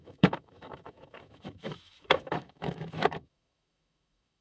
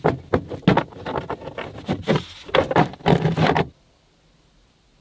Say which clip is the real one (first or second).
second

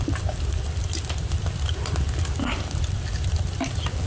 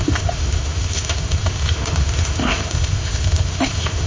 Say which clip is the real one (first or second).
first